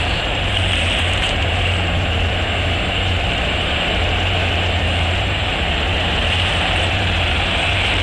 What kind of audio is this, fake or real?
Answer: fake